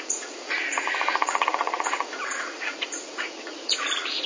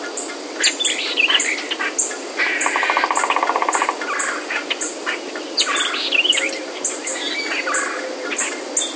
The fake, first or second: first